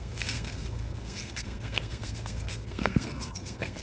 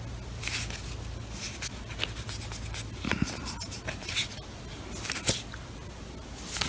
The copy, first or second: first